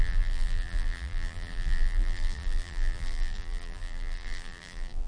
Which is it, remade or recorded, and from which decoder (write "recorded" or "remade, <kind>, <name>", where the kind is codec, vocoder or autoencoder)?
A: remade, vocoder, BigVGAN v2